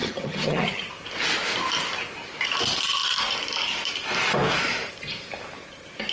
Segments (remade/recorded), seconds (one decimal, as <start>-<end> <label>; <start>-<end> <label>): 0.0-0.9 remade; 0.9-6.1 recorded